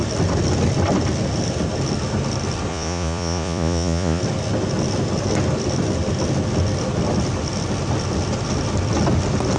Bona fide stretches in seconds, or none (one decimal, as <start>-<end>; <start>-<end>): 0.0-2.7; 4.2-9.6